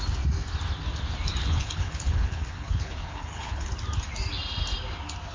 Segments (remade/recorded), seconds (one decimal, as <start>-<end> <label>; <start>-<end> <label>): 0.0-1.4 recorded; 1.4-3.7 remade; 3.7-5.3 recorded